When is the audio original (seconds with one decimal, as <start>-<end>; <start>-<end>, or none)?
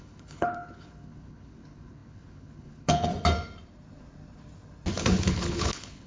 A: 3.1-4.9